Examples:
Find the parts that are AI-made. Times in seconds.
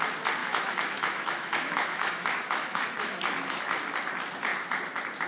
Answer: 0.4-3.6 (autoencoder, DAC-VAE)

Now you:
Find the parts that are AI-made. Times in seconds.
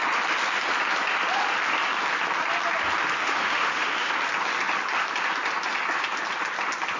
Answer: 3.2-4.1 (autoencoder, DAC-VAE)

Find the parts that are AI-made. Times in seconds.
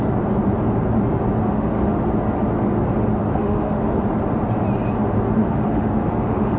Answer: 1.4-2.0 (autoencoder, DAC-VAE); 3.2-4.0; 5.4-6.6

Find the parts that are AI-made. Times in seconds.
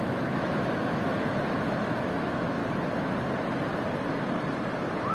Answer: 0.0-2.6 (autoencoder, DAC-VAE)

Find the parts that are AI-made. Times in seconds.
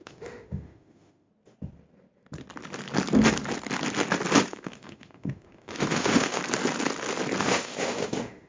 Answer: 0.0-1.3 (autoencoder, DAC-VAE); 4.5-6.4; 7.4-8.5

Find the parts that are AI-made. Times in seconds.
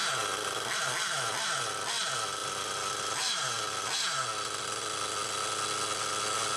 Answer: none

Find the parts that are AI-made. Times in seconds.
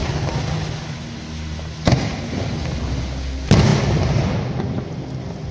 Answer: none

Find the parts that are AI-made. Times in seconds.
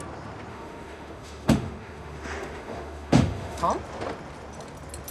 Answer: 0.5-3.6 (autoencoder, DAC-VAE)